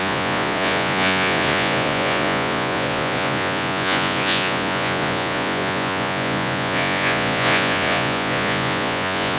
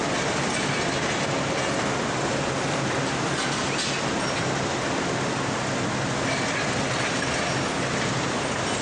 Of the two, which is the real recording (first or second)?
second